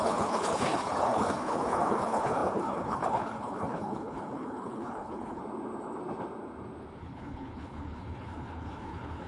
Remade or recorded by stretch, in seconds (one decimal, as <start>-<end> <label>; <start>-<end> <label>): 0.0-5.4 remade; 5.4-7.0 recorded; 7.0-9.3 remade